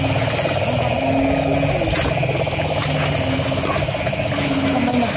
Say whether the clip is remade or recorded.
recorded